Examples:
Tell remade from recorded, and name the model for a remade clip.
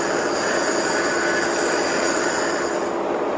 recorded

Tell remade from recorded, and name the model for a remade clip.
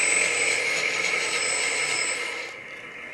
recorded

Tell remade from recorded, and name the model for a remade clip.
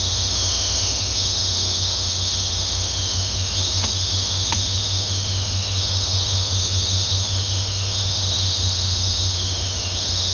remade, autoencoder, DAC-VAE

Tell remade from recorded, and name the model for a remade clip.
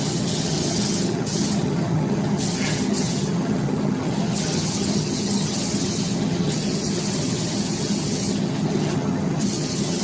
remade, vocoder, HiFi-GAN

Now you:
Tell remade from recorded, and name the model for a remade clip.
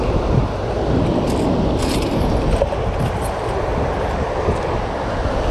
recorded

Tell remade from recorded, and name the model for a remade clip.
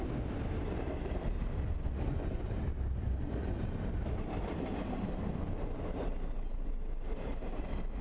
recorded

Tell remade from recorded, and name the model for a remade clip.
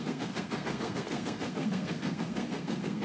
remade, codec, SNAC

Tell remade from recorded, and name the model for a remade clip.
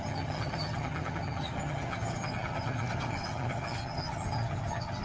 remade, vocoder, HiFi-GAN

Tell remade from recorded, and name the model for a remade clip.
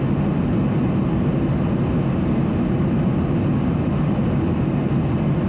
recorded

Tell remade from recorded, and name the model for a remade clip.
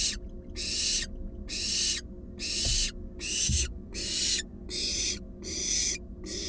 recorded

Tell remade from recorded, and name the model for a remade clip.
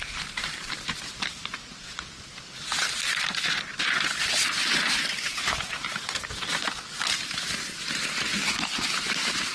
remade, vocoder, BigVGAN v2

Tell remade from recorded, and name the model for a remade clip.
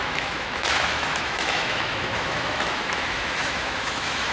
remade, autoencoder, DAC-VAE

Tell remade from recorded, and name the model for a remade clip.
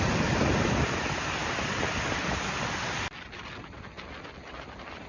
recorded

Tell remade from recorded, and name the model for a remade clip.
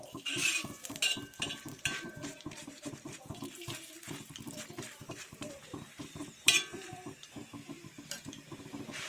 remade, vocoder, BigVGAN v2